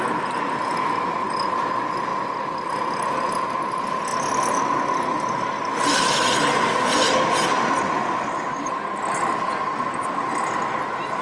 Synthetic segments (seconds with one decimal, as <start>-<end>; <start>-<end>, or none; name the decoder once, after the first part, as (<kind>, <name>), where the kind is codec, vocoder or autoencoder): none

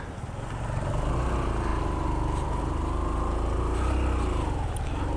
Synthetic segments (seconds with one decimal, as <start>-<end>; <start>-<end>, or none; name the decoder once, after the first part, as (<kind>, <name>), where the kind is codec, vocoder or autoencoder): none

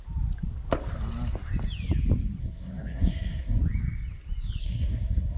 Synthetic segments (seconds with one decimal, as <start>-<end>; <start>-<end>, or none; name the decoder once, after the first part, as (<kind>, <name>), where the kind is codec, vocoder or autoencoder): 2.4-3.6 (codec, SNAC); 4.6-5.4

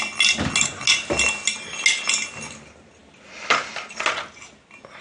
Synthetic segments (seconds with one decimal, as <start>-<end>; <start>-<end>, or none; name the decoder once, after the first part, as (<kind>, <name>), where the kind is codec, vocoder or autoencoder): none